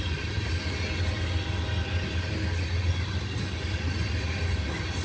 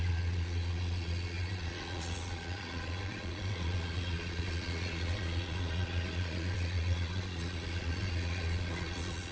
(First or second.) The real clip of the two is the first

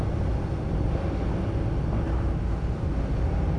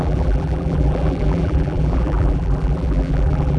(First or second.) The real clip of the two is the first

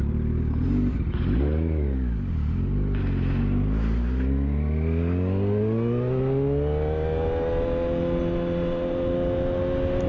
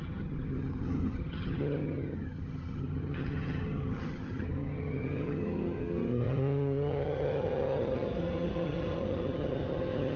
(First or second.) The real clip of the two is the first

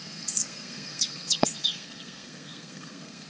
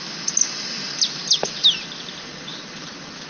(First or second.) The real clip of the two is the second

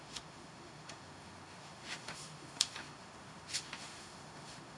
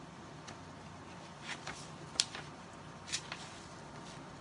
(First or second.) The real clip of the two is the second